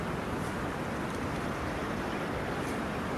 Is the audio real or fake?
fake